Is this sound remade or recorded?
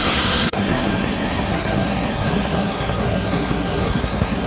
remade